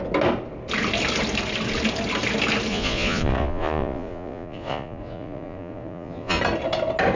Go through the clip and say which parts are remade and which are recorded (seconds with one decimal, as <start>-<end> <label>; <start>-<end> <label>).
0.0-2.7 recorded; 2.7-6.4 remade; 6.4-7.2 recorded